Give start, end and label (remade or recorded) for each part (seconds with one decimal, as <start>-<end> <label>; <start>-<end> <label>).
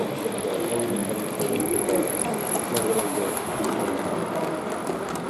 0.0-2.9 recorded; 2.9-3.6 remade; 3.6-5.3 recorded